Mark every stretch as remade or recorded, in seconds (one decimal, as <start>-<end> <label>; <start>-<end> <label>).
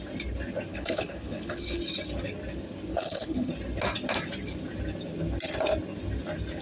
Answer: 0.0-0.7 recorded; 0.7-1.8 remade; 1.8-2.9 recorded; 2.9-3.5 remade; 3.5-6.6 recorded